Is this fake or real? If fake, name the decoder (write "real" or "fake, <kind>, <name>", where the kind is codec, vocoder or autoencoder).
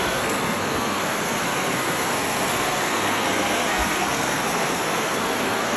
fake, codec, SNAC